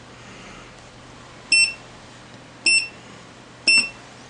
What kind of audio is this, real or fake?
real